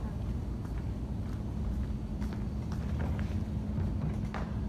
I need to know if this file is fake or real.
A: real